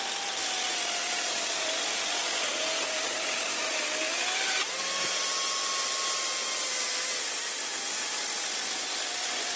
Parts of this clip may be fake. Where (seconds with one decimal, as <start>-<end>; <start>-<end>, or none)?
none